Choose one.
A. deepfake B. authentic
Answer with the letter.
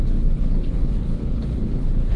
A